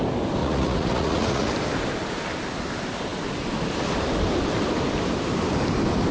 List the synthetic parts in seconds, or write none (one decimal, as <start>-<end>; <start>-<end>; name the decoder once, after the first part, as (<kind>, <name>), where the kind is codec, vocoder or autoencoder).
0.4-1.5 (vocoder, Vocos)